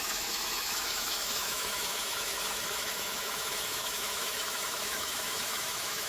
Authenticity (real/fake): fake